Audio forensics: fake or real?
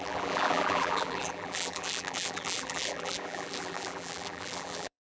fake